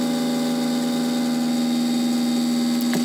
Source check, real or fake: real